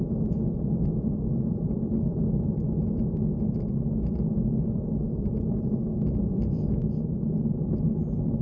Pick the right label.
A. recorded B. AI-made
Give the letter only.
A